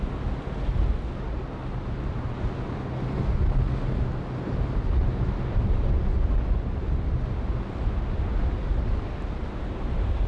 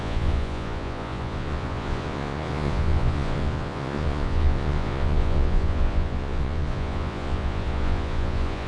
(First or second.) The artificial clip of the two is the second